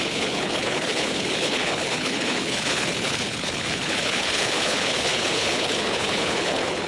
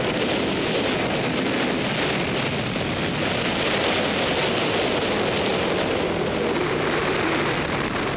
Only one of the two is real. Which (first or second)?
second